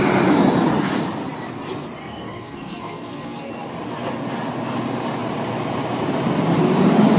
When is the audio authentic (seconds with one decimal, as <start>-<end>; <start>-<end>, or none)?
0.0-2.0; 3.5-7.2